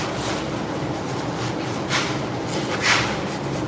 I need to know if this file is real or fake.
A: real